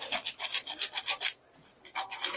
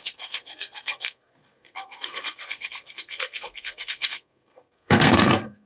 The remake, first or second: second